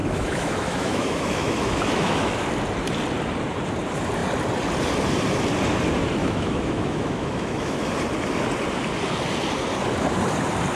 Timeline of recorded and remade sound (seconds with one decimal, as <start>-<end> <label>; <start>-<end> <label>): 0.0-2.3 remade; 2.3-6.2 recorded; 6.2-7.9 remade; 7.9-10.8 recorded